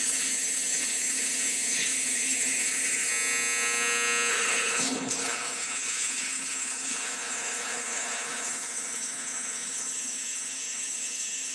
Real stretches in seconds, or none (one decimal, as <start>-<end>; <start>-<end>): 3.1-4.3

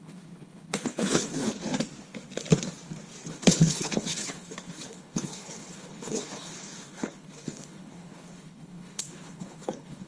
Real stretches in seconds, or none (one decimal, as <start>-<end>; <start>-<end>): 1.6-3.3

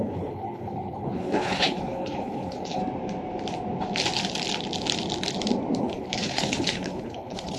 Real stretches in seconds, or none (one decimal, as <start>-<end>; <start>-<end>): 2.8-5.8